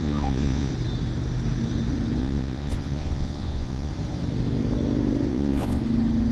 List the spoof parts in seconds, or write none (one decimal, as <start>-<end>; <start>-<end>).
0.0-0.7; 2.2-3.9; 5.3-5.8